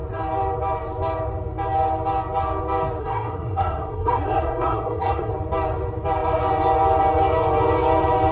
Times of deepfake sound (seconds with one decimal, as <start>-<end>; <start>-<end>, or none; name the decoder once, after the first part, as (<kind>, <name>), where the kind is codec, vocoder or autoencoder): 3.0-5.3 (codec, SNAC)